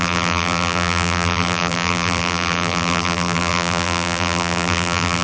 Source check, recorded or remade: remade